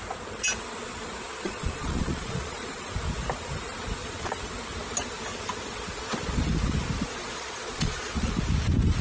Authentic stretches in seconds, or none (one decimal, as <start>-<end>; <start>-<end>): 0.0-1.3; 2.8-4.0; 4.5-7.1; 8.3-9.0